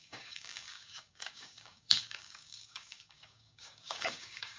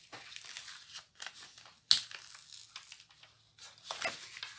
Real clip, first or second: second